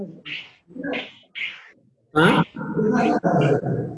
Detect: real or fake real